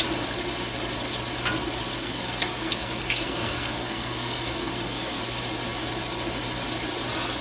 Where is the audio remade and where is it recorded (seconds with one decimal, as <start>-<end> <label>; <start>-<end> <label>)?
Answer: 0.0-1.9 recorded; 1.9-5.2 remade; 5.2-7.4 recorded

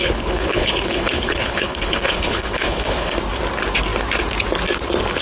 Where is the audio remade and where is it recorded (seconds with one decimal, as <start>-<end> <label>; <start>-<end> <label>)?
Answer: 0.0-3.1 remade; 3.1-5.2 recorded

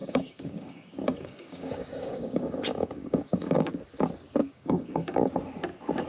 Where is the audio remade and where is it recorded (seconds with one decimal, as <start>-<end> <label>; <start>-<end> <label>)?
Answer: 0.0-3.7 remade; 3.7-4.4 recorded; 4.4-5.3 remade; 5.3-6.1 recorded

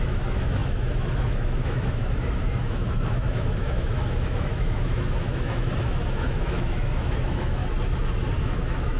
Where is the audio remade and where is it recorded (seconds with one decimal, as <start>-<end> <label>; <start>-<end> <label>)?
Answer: 0.0-7.6 remade; 7.6-8.4 recorded; 8.4-9.0 remade

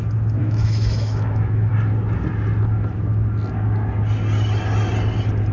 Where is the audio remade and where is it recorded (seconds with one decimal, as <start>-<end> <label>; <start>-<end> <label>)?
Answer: 0.0-0.4 recorded; 0.4-1.7 remade; 1.7-5.5 recorded

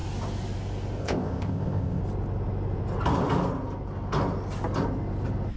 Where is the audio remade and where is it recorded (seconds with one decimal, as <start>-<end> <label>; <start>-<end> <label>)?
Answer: 0.0-1.0 recorded; 1.0-2.0 remade; 2.0-5.6 recorded

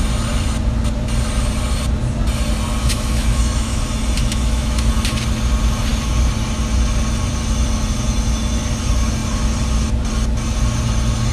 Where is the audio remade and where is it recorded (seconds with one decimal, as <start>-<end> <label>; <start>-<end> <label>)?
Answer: 0.0-2.8 recorded; 2.8-3.8 remade; 3.8-4.2 recorded; 4.2-4.9 remade; 4.9-11.3 recorded